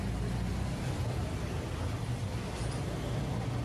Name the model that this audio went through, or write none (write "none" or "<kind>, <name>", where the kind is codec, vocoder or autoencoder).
none